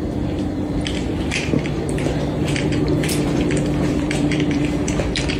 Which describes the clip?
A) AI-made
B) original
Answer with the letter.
A